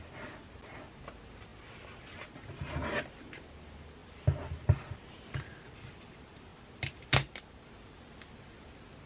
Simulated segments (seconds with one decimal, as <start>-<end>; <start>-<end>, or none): none